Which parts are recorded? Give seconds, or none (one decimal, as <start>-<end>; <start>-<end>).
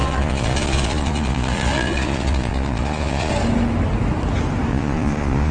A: 3.3-4.7